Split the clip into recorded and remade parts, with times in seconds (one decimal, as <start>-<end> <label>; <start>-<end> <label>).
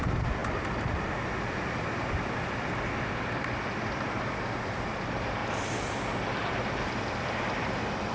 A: 0.0-0.4 remade; 0.4-1.0 recorded; 1.0-5.4 remade; 5.4-8.1 recorded